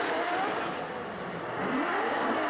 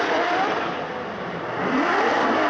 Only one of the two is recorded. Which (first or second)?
first